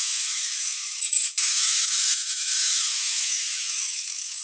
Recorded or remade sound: remade